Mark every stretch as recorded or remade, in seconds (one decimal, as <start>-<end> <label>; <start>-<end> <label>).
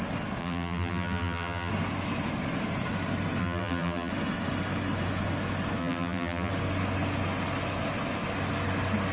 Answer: 0.0-0.4 recorded; 0.4-1.7 remade; 1.7-3.4 recorded; 3.4-4.1 remade; 4.1-5.8 recorded; 5.8-6.5 remade; 6.5-9.1 recorded